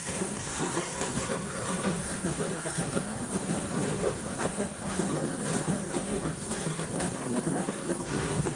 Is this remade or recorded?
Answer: remade